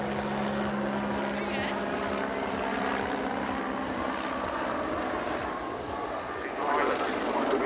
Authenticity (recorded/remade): recorded